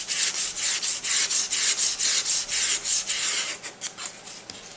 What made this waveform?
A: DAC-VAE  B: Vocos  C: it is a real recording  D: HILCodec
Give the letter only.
C